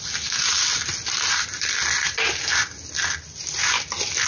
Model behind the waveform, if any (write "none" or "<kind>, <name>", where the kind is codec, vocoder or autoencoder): none